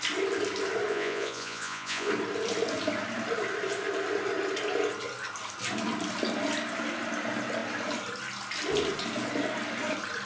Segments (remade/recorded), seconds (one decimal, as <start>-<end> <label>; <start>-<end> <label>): 0.0-0.9 recorded; 0.9-2.1 remade; 2.1-10.3 recorded